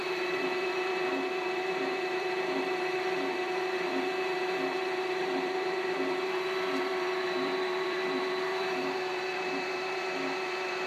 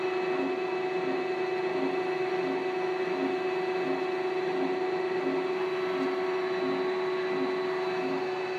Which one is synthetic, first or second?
first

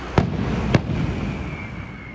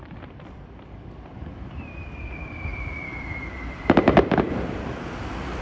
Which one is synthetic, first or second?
second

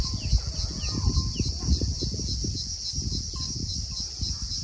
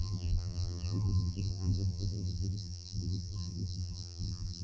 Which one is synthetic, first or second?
second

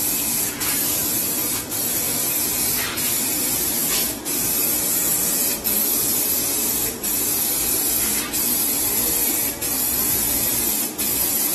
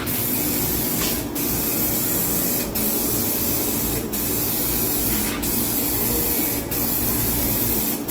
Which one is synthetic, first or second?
first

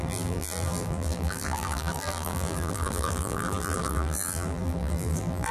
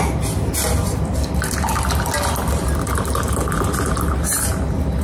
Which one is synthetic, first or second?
first